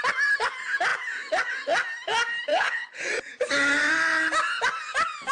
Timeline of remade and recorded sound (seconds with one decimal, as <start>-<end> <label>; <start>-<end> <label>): 0.0-2.5 recorded; 2.5-3.0 remade; 3.0-5.3 recorded